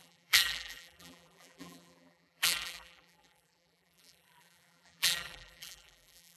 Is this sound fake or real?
fake